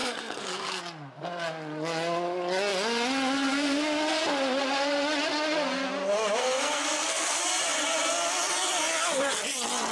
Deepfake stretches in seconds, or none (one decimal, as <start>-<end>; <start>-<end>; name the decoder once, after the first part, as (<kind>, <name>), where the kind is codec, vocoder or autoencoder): 0.0-0.8 (codec, SNAC); 6.4-7.4